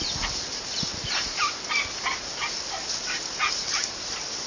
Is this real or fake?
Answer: real